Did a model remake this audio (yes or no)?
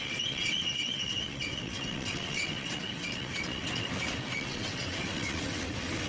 yes